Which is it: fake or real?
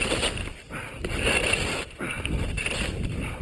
real